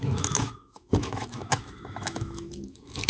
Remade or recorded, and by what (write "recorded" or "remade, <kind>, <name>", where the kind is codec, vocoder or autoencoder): remade, autoencoder, DAC-VAE